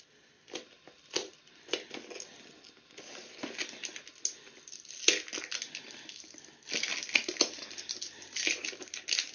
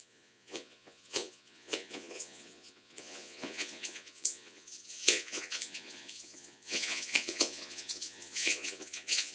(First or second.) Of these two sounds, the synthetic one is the second